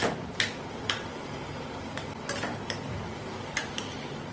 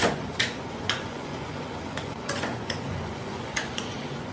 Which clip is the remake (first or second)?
second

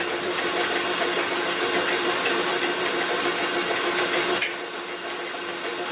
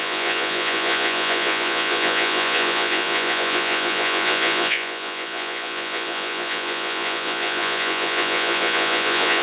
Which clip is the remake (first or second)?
second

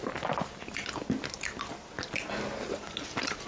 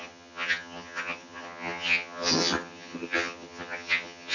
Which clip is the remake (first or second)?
second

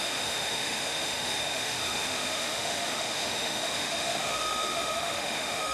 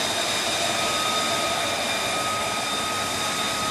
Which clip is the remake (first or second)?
first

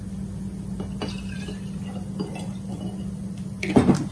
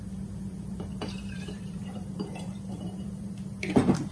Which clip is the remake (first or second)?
second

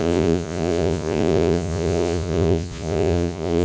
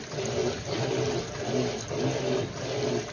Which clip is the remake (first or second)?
first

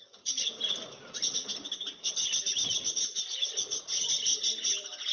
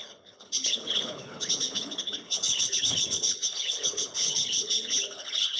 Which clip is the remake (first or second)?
second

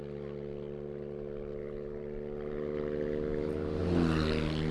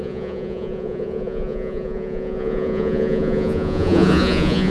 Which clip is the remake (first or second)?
second